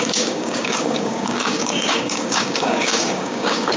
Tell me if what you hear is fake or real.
fake